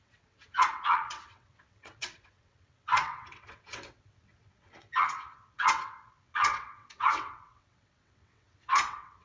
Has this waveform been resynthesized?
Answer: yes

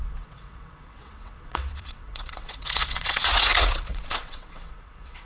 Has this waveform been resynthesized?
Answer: yes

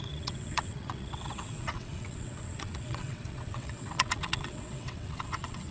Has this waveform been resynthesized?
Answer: yes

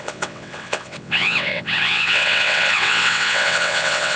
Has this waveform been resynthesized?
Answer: yes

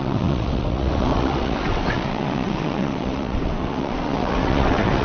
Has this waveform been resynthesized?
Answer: yes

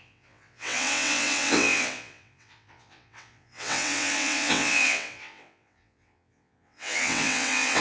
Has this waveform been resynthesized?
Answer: yes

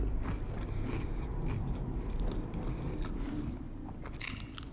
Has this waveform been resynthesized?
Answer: no